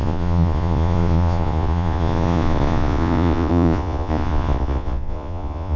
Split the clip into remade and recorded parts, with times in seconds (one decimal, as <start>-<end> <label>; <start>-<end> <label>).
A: 0.0-5.8 remade